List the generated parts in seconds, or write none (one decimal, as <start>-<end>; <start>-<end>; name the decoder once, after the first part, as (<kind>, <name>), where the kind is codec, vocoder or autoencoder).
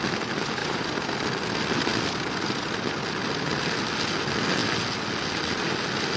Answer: 0.6-1.1 (vocoder, BigVGAN v2)